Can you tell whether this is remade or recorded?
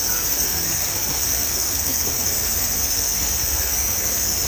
remade